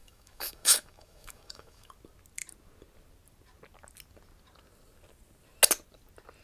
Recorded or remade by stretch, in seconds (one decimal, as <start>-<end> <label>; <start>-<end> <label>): 0.0-1.9 remade; 1.9-6.4 recorded